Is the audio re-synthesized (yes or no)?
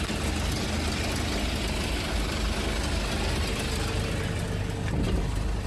no